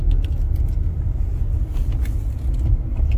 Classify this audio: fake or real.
real